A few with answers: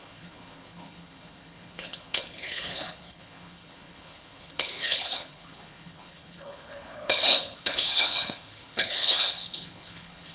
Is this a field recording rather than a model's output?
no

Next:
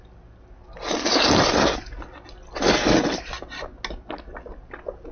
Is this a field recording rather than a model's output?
yes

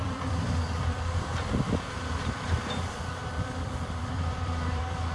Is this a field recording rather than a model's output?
no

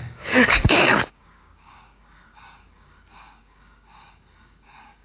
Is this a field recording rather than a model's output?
no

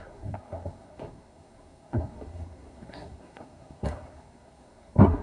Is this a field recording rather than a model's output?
no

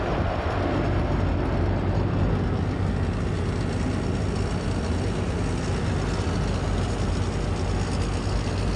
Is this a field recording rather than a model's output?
yes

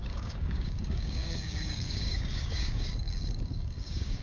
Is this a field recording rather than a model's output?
no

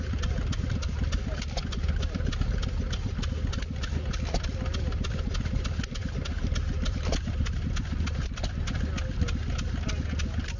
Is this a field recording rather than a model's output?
yes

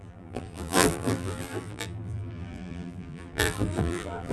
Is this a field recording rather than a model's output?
no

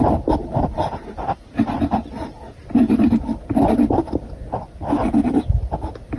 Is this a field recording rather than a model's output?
yes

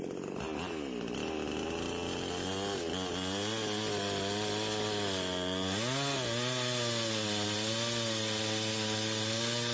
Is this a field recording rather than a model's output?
yes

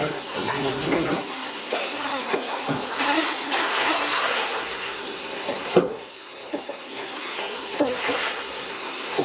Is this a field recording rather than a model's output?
no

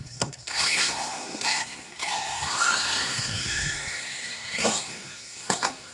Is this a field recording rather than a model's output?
no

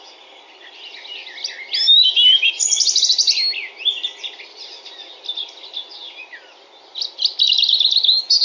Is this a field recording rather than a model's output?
yes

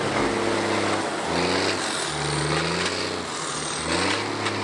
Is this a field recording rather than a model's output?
yes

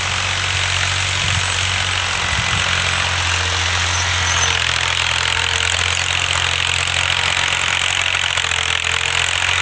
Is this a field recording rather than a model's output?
yes